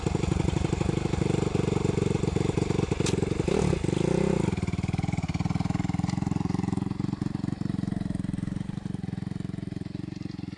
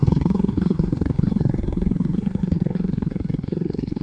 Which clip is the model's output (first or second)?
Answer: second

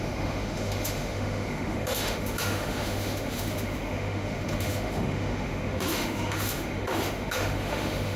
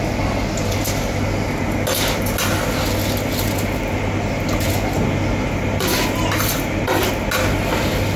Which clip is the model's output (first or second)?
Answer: first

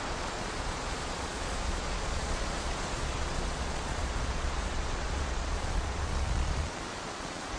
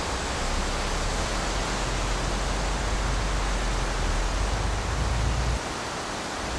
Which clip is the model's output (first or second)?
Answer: first